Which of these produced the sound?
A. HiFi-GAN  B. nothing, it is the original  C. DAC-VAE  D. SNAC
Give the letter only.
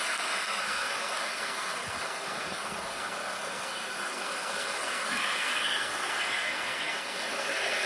D